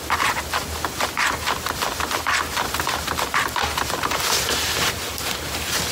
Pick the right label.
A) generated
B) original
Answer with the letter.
B